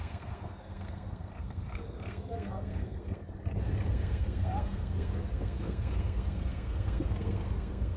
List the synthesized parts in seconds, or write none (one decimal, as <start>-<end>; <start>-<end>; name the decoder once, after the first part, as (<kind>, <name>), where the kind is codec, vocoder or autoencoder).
0.0-3.2 (codec, SNAC); 3.9-8.0